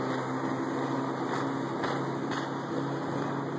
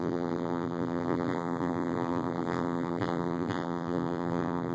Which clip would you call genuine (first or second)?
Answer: first